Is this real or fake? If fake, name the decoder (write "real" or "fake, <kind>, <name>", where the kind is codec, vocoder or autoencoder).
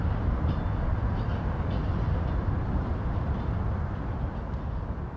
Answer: real